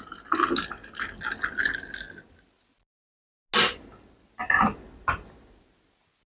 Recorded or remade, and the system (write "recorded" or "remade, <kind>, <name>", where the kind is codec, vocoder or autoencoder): recorded